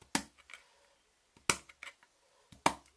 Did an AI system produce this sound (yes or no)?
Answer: no